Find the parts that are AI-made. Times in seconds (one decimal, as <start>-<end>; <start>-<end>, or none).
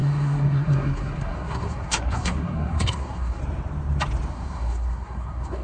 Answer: 0.0-3.4; 4.3-5.6